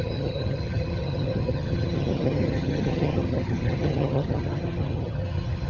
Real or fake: fake